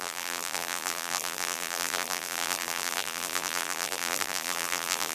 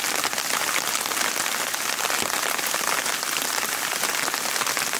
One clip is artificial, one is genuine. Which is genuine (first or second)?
second